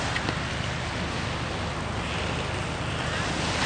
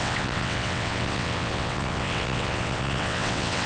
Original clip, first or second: first